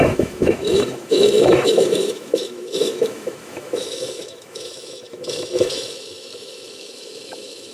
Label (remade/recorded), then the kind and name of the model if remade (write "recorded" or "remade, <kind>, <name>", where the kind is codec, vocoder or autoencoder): remade, autoencoder, DAC-VAE